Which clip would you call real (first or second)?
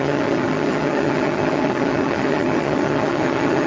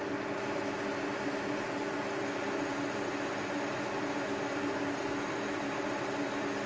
second